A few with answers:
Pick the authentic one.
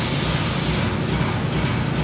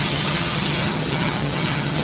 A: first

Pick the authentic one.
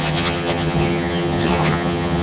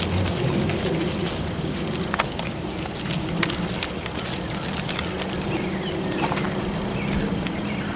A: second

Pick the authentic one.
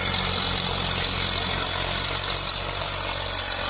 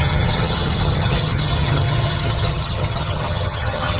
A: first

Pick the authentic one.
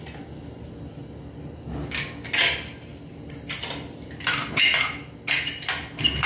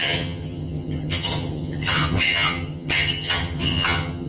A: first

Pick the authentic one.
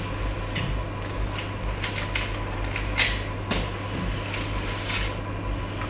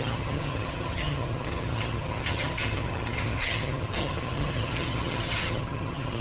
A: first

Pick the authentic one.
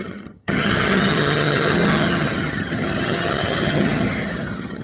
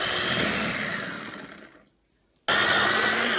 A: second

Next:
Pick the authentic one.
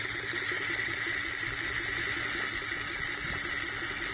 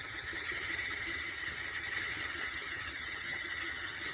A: first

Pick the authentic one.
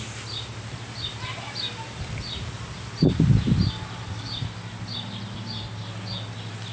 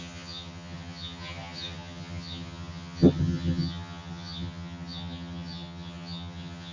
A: first